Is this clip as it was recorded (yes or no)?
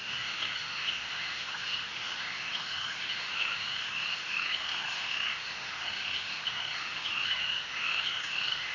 no